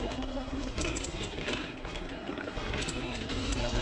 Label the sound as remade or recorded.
remade